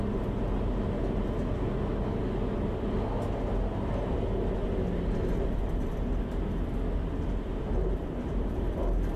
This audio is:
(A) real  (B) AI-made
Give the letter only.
A